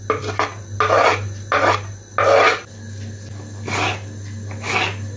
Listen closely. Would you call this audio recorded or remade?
recorded